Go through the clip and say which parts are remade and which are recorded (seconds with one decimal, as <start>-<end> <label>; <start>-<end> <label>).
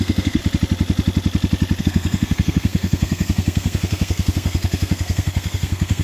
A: 0.0-0.4 remade; 0.4-1.8 recorded; 1.8-6.0 remade